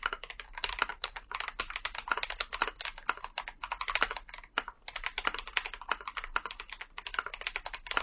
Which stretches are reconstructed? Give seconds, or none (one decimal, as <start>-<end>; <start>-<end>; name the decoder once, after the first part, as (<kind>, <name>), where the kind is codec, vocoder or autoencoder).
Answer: 0.9-1.6 (vocoder, BigVGAN v2)

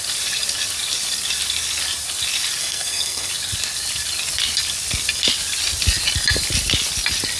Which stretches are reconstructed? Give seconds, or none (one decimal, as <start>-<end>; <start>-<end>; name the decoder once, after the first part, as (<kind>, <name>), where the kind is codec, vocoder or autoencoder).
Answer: 2.6-3.3 (codec, SNAC)

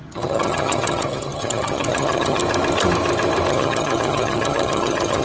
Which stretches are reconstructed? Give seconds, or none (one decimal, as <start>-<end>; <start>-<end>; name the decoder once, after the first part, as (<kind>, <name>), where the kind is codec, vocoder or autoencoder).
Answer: 0.0-2.4 (vocoder, HiFi-GAN); 3.5-5.2

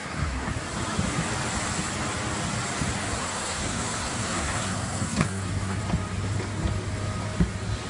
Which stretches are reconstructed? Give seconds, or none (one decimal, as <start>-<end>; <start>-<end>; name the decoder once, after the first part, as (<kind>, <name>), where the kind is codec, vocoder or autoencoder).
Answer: 0.0-0.5 (codec, SNAC); 3.2-5.8

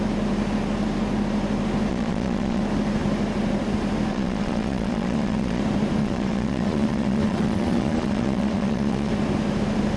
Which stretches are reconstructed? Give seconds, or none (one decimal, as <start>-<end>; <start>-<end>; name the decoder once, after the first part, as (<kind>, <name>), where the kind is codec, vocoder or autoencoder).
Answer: 1.9-2.6 (vocoder, Vocos); 4.1-5.6; 6.0-9.1